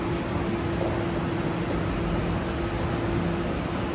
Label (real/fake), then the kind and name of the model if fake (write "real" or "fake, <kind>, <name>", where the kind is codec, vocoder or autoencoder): real